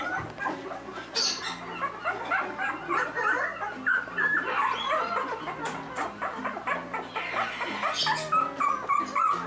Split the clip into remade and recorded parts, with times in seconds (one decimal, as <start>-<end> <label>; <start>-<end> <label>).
0.0-9.5 recorded